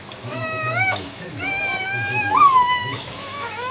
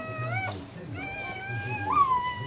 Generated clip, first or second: first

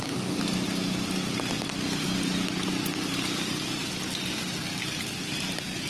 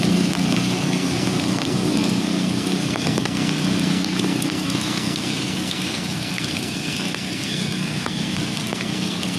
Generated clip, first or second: second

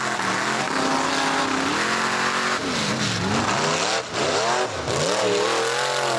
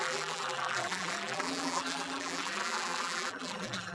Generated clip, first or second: second